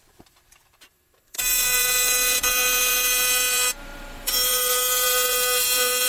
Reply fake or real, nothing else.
fake